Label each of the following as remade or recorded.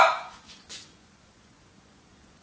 remade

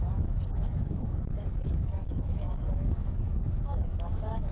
remade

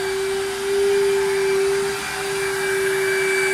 recorded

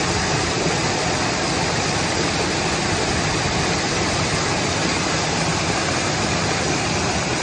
recorded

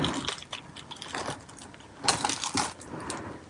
recorded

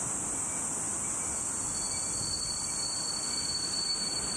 recorded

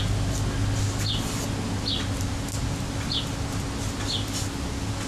recorded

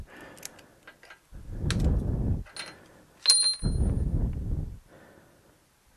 recorded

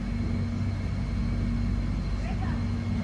recorded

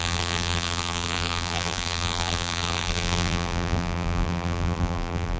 remade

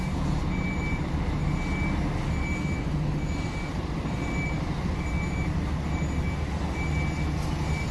recorded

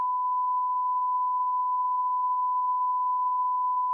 recorded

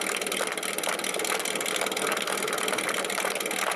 recorded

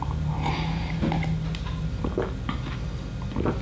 recorded